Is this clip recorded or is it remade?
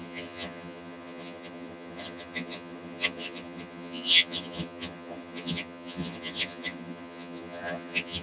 remade